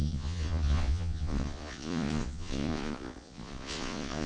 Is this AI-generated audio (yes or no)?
yes